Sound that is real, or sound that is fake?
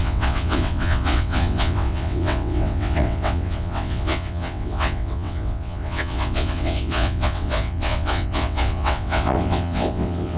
fake